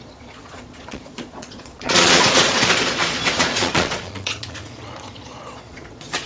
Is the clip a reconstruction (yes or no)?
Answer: yes